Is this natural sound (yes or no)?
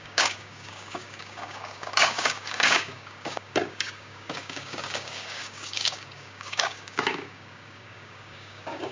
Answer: no